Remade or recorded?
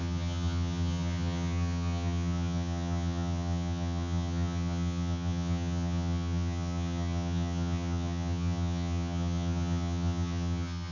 remade